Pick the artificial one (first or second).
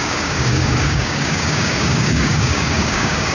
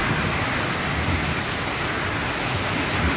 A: first